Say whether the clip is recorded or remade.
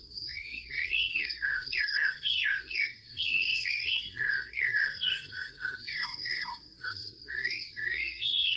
remade